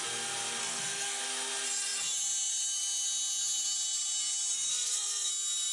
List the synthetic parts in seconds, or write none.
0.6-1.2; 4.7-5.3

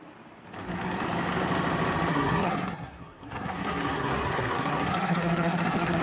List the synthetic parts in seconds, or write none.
2.1-6.0

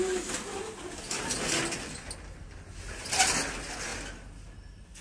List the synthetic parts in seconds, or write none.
none

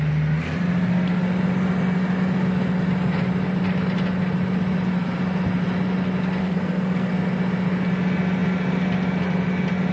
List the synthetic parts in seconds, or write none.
6.4-7.1

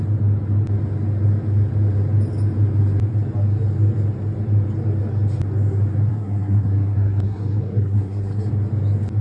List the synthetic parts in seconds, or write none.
6.1-8.5

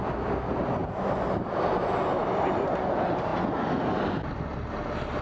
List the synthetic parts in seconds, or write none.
none

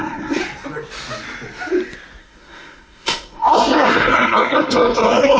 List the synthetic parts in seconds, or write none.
0.0-0.4; 2.2-5.4

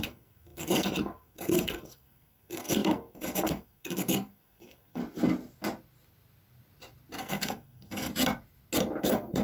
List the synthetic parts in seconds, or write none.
0.0-5.0; 7.2-8.1; 9.0-9.4